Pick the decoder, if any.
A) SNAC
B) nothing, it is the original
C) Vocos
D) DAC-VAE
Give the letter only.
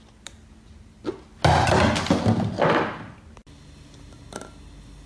B